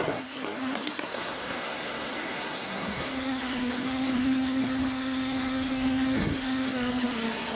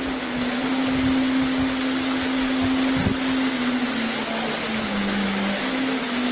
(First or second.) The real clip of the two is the second